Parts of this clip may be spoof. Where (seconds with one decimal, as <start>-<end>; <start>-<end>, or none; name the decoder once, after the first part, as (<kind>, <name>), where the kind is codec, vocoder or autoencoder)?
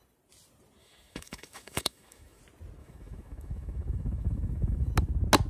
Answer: 0.8-2.4 (autoencoder, DAC-VAE); 2.8-4.9